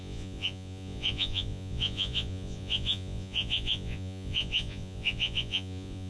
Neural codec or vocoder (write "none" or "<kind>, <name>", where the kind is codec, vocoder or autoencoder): vocoder, Vocos